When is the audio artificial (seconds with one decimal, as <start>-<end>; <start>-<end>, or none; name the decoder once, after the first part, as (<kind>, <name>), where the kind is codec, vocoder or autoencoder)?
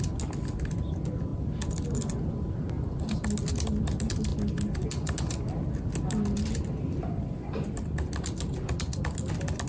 none